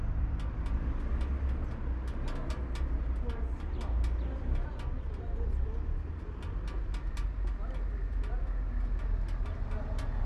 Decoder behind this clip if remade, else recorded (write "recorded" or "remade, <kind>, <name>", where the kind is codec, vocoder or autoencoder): recorded